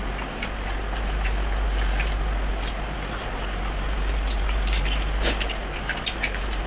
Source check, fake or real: real